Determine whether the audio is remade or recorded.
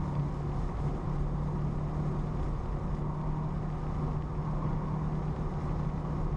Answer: recorded